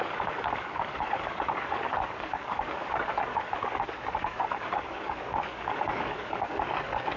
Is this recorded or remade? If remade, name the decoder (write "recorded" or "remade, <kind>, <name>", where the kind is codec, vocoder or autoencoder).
remade, codec, DAC